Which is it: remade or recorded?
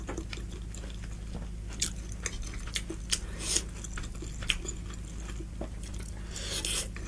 recorded